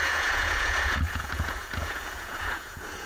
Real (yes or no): no